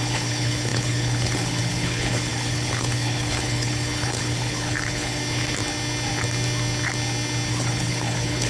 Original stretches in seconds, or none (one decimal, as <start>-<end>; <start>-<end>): 5.2-7.5